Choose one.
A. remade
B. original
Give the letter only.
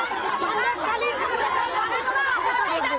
B